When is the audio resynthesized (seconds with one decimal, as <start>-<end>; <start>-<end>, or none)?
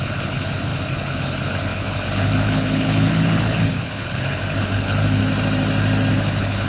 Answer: 0.0-5.2; 6.1-6.7